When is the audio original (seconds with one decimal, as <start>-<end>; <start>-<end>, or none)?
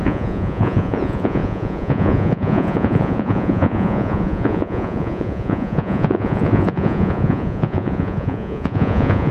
none